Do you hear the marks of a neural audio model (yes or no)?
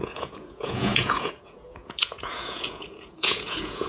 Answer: yes